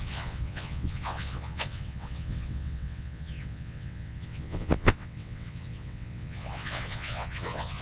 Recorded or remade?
remade